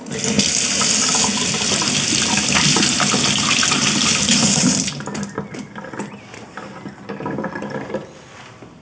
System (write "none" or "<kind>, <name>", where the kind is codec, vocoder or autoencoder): none